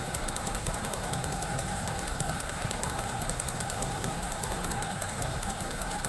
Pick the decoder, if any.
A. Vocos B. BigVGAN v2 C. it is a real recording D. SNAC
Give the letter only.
D